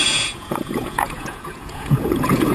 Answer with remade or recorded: remade